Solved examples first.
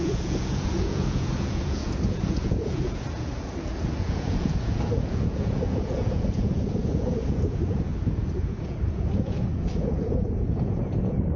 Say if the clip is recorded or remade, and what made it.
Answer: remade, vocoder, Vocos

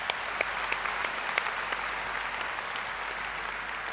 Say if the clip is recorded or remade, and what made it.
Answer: recorded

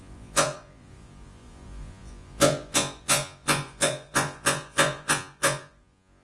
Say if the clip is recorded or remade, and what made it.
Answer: remade, vocoder, Vocos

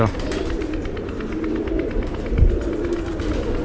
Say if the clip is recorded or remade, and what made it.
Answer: recorded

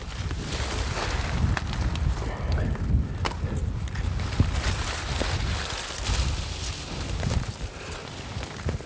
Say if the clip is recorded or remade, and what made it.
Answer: recorded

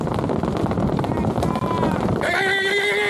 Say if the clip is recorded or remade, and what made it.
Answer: recorded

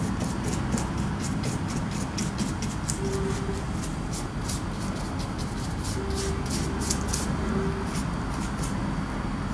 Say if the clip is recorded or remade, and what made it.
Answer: recorded